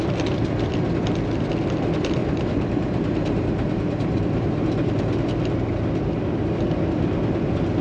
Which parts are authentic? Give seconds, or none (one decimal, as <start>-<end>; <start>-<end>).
0.0-2.2; 5.0-7.8